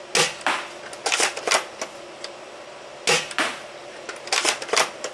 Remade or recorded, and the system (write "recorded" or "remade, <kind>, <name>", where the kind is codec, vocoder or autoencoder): recorded